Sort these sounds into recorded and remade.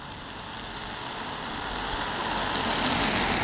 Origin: recorded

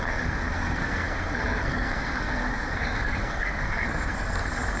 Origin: remade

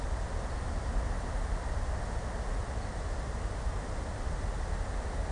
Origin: recorded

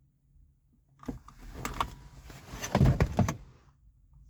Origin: recorded